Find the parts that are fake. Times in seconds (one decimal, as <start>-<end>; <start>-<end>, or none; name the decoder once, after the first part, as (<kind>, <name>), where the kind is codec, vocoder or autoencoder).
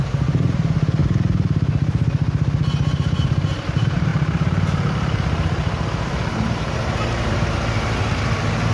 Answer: 0.0-1.0 (vocoder, BigVGAN v2); 3.2-8.7